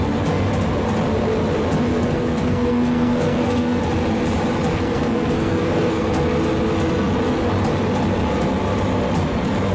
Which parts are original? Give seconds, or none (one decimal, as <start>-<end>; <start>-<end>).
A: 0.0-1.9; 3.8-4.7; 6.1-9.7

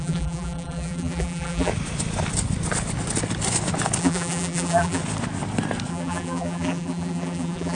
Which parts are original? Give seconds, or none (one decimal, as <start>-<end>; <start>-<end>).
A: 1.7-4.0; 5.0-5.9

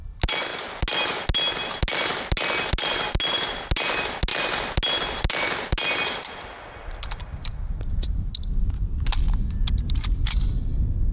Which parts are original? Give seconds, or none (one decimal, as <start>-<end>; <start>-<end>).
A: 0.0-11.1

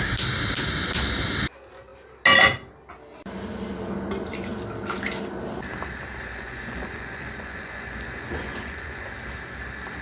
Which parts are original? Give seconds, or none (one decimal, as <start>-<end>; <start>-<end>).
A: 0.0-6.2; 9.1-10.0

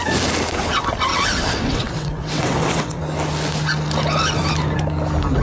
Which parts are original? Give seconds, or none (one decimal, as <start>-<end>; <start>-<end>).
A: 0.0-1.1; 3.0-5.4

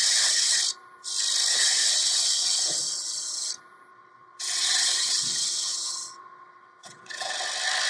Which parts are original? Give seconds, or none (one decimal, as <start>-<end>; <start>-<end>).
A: 0.6-1.5; 3.5-3.9; 7.3-7.9